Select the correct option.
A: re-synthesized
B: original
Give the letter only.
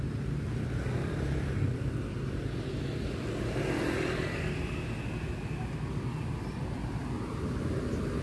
B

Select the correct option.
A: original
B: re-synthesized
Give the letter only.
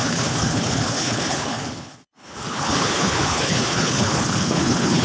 B